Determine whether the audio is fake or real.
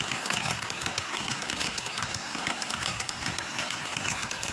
fake